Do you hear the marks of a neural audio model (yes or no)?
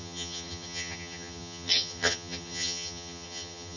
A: yes